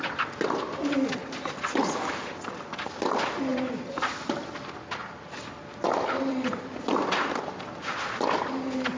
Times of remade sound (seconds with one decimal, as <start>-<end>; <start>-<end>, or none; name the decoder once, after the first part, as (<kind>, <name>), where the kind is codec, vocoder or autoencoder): 3.5-4.5 (vocoder, BigVGAN v2); 5.0-5.5